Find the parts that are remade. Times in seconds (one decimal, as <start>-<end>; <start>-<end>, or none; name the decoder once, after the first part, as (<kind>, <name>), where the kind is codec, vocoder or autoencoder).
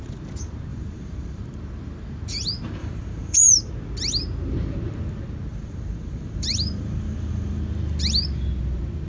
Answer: 0.7-1.4 (vocoder, BigVGAN v2); 2.8-3.7; 5.5-7.6